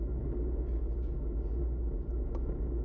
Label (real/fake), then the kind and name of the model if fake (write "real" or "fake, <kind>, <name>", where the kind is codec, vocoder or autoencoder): real